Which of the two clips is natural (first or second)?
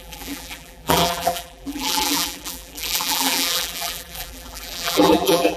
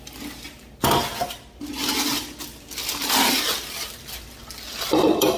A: second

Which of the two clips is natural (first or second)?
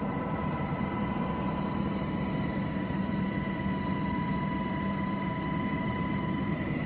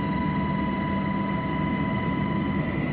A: second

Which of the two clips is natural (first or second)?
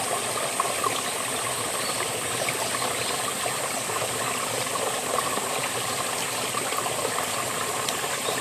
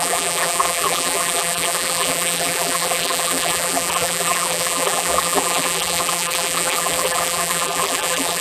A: first